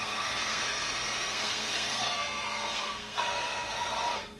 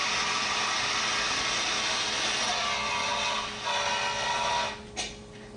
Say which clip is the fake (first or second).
first